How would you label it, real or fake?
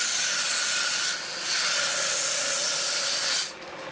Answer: real